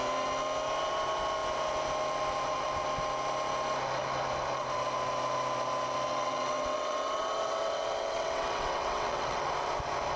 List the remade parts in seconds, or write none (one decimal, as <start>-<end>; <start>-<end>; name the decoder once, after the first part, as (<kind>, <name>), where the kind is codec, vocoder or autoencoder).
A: 6.1-9.5 (vocoder, WaveNeXt)

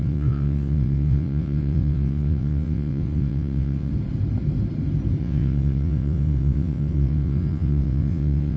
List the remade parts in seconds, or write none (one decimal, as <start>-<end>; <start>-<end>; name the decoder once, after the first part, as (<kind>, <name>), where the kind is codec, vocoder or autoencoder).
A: 0.0-3.9 (vocoder, WaveNeXt); 5.2-8.6

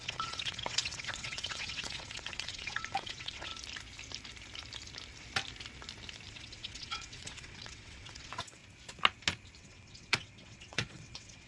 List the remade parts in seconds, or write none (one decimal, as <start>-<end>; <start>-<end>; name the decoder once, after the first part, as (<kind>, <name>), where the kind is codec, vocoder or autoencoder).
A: 0.0-3.5 (vocoder, WaveNeXt); 6.3-8.6; 9.6-11.5

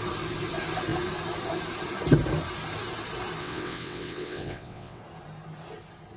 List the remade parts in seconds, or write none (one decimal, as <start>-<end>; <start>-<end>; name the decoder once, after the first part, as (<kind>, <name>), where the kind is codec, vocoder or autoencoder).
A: 3.4-5.0 (vocoder, WaveNeXt)

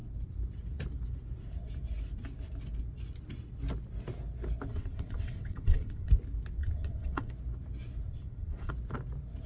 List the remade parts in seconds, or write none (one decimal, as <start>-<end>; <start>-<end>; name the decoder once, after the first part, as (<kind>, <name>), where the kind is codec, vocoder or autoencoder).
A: 4.7-6.1 (vocoder, WaveNeXt); 6.6-7.3; 8.1-8.7